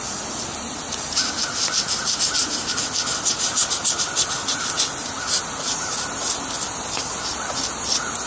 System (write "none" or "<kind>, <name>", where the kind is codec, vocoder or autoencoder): none